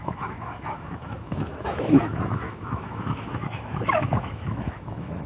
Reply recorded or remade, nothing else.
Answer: remade